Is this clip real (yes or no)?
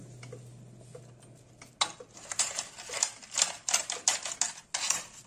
yes